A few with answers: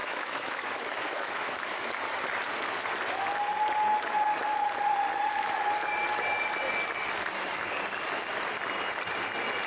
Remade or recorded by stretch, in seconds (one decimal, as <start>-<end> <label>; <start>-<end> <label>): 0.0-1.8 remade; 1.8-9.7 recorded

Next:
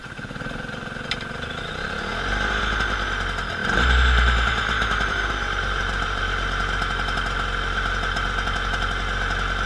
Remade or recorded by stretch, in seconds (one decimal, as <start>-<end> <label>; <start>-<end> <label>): 0.0-3.6 recorded; 3.6-6.2 remade; 6.2-9.7 recorded

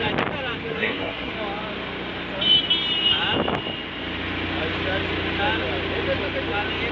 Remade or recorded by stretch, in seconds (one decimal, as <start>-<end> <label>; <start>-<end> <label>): 0.0-0.7 recorded; 0.7-1.3 remade; 1.3-6.9 recorded